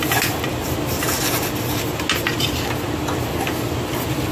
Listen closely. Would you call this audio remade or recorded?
recorded